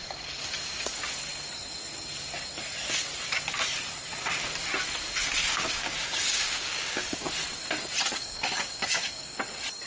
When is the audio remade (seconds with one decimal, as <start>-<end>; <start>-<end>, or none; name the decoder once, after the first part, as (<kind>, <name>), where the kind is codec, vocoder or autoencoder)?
5.4-7.3 (codec, DAC); 8.1-9.4